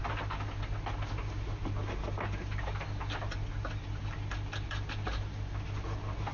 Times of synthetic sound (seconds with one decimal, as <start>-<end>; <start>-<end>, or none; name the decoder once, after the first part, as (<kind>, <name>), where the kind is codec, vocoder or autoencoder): none